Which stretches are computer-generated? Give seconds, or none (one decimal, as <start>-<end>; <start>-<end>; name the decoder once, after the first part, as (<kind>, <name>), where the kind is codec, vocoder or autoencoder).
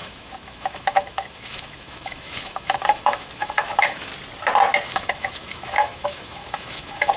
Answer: 0.0-4.1 (autoencoder, DAC-VAE); 4.9-7.2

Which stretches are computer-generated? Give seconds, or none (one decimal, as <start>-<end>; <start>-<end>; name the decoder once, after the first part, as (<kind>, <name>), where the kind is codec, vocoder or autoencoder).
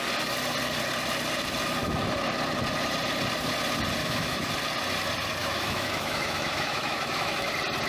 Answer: 4.0-4.5 (autoencoder, DAC-VAE); 5.4-7.5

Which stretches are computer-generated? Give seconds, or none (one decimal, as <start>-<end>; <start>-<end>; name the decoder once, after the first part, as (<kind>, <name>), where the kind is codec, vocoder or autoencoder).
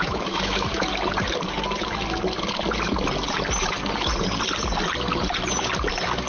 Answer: 0.0-0.9 (autoencoder, DAC-VAE)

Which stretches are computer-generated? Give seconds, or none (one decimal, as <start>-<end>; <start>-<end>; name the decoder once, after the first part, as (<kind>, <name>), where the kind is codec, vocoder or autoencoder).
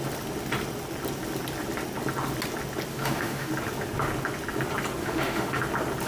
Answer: 2.9-3.5 (autoencoder, DAC-VAE); 5.0-5.6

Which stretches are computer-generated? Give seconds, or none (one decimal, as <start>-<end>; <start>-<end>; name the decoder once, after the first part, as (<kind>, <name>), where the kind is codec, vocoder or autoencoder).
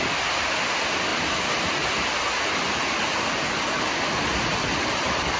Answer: none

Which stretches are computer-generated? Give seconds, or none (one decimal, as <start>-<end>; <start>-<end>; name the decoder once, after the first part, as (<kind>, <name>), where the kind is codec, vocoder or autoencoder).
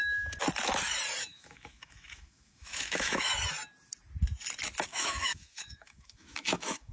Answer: 1.2-3.3 (autoencoder, DAC-VAE); 4.9-6.9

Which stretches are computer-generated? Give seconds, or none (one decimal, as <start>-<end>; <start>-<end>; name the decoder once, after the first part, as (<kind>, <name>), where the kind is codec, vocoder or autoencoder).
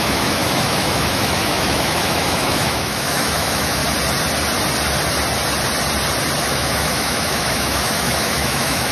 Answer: 0.0-3.8 (autoencoder, DAC-VAE); 6.4-8.9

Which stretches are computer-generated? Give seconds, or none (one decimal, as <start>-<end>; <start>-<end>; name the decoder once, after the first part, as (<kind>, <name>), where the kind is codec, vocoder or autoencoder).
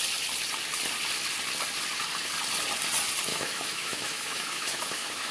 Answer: 3.3-5.3 (autoencoder, DAC-VAE)